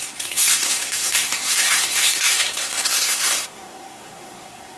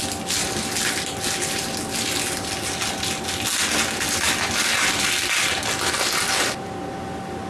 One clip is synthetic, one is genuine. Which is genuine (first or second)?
second